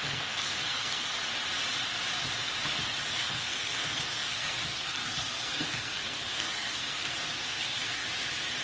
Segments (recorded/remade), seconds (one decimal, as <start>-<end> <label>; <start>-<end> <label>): 0.0-1.2 remade; 1.2-3.1 recorded; 3.1-8.0 remade; 8.0-8.6 recorded